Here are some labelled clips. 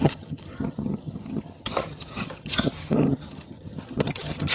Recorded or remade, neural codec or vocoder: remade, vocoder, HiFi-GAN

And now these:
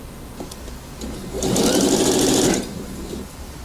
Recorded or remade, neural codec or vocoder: recorded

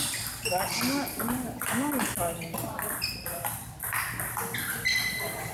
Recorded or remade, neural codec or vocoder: recorded